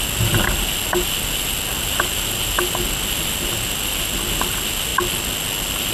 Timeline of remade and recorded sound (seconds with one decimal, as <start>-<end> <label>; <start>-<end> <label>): 0.0-5.9 recorded